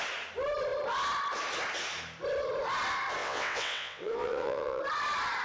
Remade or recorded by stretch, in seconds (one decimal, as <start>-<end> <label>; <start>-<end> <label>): 0.0-3.2 recorded; 3.2-4.8 remade; 4.8-5.4 recorded